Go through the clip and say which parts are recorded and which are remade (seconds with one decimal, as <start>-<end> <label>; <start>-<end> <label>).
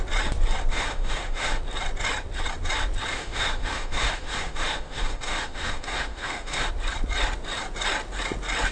0.0-0.7 recorded; 0.7-1.6 remade; 1.6-3.1 recorded; 3.1-6.7 remade; 6.7-8.7 recorded